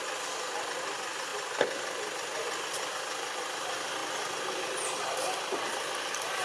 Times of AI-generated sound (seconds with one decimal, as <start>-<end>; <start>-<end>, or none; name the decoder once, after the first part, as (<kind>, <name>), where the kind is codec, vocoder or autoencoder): none